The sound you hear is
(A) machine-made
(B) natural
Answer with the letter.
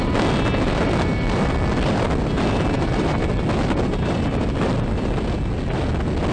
B